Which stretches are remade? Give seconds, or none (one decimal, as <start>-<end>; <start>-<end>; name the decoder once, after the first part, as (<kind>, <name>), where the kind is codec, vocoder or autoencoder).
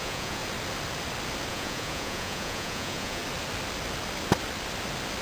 0.0-0.4 (vocoder, Vocos); 1.5-3.2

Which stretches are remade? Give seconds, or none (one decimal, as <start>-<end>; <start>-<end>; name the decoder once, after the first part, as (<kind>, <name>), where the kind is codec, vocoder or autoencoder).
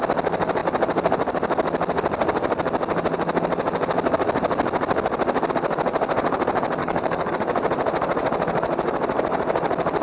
6.8-7.3 (codec, DAC)